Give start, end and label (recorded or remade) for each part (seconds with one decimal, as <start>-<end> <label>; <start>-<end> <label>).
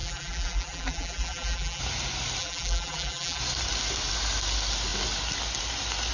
0.0-1.8 remade; 1.8-2.4 recorded; 2.4-3.4 remade; 3.4-6.1 recorded